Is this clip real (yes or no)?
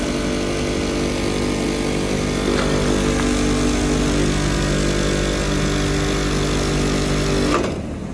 yes